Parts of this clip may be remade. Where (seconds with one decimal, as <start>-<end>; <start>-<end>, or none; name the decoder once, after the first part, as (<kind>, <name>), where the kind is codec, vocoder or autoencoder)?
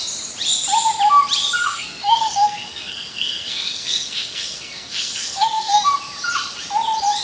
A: 1.6-5.9 (codec, SNAC)